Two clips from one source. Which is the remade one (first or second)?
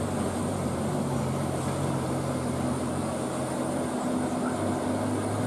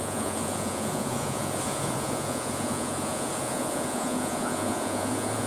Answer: second